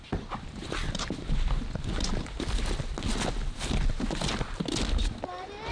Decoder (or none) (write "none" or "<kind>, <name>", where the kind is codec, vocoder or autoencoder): none